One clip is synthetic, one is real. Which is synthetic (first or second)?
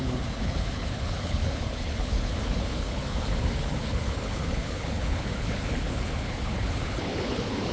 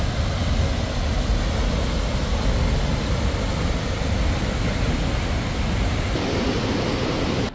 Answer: first